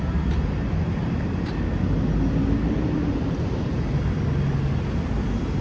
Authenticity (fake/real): real